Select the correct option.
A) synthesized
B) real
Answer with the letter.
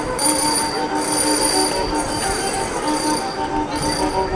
B